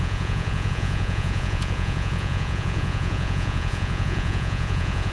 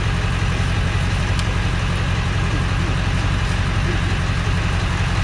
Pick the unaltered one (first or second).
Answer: second